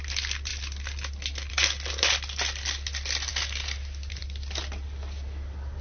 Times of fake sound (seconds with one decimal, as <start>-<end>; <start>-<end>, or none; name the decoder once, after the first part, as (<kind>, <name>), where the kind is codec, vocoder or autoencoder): none